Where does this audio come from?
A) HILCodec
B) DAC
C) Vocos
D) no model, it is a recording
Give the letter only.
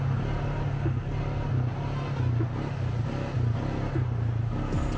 D